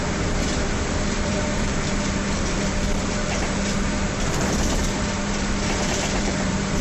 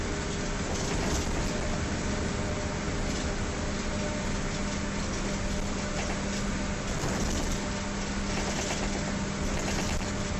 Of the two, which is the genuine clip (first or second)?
second